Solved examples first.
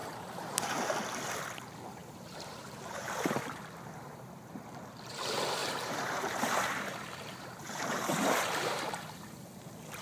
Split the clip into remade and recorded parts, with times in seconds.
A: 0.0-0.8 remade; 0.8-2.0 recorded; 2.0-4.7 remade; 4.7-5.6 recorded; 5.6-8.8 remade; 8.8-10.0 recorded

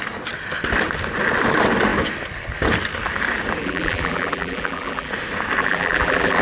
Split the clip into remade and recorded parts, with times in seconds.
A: 0.0-3.6 recorded; 3.6-5.1 remade; 5.1-5.6 recorded; 5.6-6.4 remade

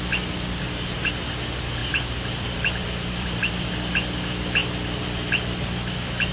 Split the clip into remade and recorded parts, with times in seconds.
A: 0.0-1.8 recorded; 1.8-3.5 remade; 3.5-6.3 recorded

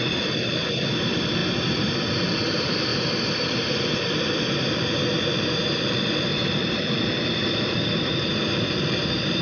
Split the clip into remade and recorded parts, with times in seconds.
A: 0.0-1.4 remade; 1.4-2.4 recorded; 2.4-9.4 remade

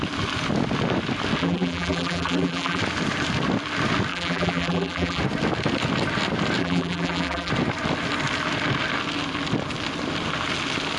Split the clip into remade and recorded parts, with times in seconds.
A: 0.0-1.4 recorded; 1.4-2.8 remade; 2.8-4.1 recorded; 4.1-5.2 remade; 5.2-6.6 recorded; 6.6-7.5 remade; 7.5-11.0 recorded

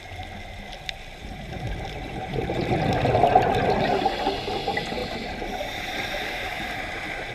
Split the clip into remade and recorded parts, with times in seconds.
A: 0.0-1.2 recorded; 1.2-2.6 remade; 2.6-5.0 recorded; 5.0-7.3 remade

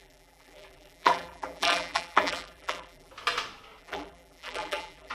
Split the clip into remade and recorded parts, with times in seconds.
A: 0.0-3.1 remade; 3.1-3.8 recorded; 3.8-5.1 remade